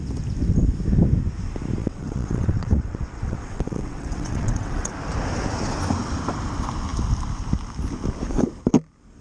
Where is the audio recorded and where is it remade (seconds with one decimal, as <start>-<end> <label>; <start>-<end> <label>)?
0.0-1.8 recorded; 1.8-4.9 remade; 4.9-9.2 recorded